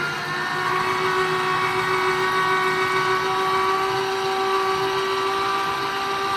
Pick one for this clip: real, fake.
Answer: real